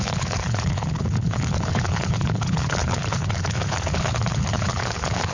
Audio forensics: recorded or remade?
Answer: remade